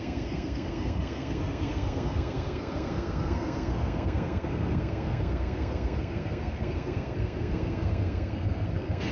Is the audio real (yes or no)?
no